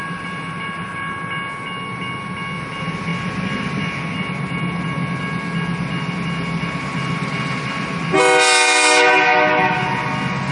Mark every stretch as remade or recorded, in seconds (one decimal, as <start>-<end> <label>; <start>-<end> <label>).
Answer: 0.0-10.5 recorded